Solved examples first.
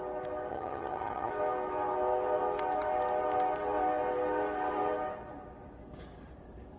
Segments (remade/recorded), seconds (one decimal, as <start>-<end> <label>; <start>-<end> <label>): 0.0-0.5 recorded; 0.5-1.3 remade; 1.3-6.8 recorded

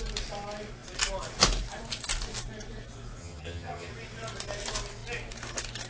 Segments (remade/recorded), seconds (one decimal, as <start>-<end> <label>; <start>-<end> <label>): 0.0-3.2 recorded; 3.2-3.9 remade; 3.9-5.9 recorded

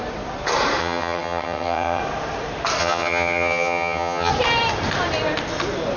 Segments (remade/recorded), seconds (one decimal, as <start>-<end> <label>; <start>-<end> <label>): 0.0-0.8 recorded; 0.8-2.0 remade; 2.0-2.8 recorded; 2.8-4.3 remade; 4.3-6.0 recorded